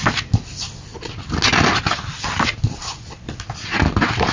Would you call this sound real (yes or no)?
yes